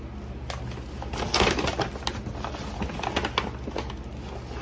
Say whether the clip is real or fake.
real